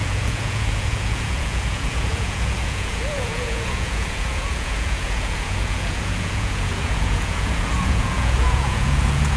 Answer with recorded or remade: remade